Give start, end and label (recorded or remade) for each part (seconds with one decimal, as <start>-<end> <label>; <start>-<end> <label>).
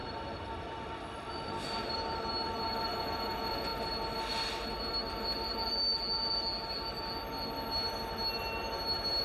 0.0-3.0 recorded; 3.0-3.7 remade; 3.7-9.2 recorded